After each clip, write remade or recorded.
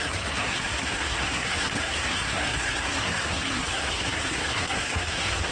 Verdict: remade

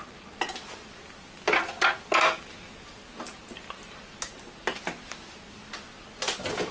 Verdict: recorded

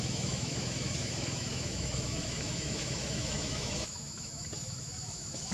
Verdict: remade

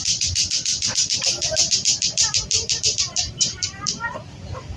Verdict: remade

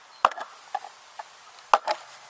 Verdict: recorded